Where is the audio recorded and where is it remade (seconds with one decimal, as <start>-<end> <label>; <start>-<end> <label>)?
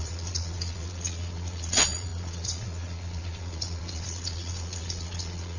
0.0-5.6 remade